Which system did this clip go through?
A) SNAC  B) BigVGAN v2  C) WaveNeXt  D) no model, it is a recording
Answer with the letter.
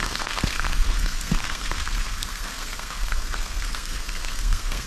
A